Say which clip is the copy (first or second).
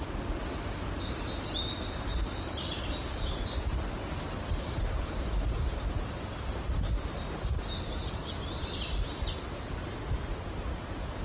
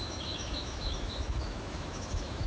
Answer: second